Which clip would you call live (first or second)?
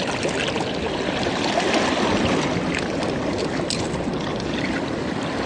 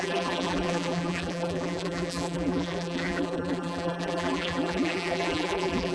first